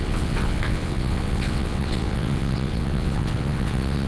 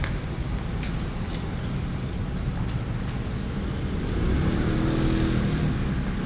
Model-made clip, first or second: first